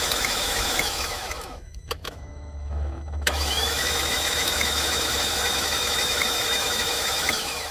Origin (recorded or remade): remade